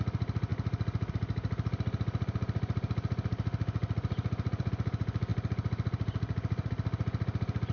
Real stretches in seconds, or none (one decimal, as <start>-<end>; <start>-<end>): 0.0-3.8; 4.7-5.3; 6.7-7.7